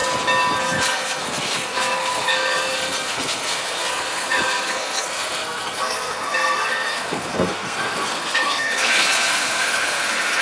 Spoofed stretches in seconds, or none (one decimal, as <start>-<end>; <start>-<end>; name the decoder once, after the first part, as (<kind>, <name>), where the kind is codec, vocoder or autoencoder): 0.6-10.4 (codec, SNAC)